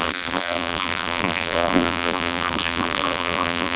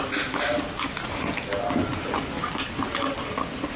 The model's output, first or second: first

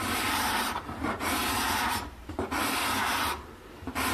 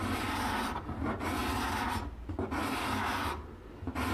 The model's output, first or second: first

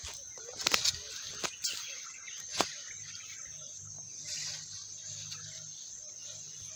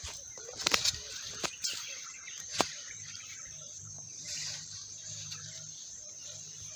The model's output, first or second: second